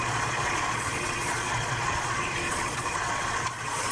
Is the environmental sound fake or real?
fake